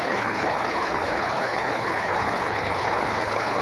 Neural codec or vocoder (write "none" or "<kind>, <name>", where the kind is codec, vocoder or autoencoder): codec, HILCodec